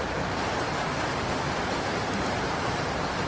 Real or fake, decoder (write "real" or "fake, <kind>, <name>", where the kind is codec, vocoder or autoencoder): real